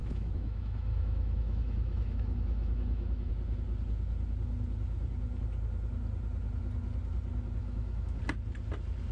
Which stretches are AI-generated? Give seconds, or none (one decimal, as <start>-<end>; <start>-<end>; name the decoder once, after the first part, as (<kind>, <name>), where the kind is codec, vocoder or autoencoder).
0.0-3.3 (autoencoder, DAC-VAE); 7.6-8.2